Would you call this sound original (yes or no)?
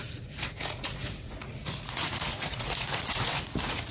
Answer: no